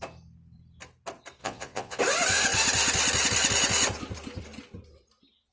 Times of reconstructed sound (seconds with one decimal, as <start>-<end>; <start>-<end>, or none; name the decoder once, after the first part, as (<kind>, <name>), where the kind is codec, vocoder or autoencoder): 1.4-2.0 (vocoder, Vocos)